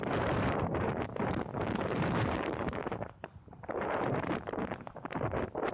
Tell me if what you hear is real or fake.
fake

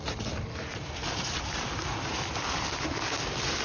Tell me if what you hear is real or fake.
fake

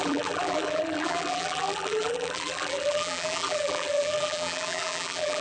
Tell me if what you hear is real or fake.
fake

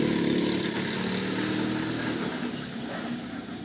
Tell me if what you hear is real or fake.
real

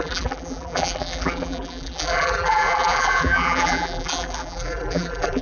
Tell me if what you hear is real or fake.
fake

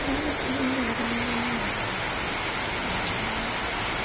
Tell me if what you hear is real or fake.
real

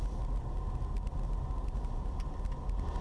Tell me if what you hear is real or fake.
real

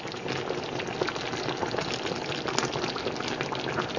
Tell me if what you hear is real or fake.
real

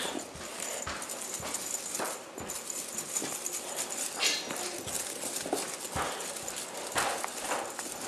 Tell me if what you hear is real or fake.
real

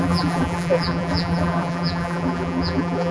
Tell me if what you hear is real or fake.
fake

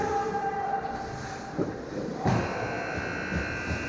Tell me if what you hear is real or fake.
fake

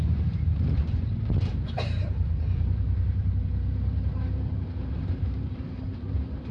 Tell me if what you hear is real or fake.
fake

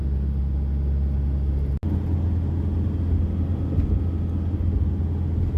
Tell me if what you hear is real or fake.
real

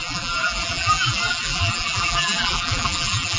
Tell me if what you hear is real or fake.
fake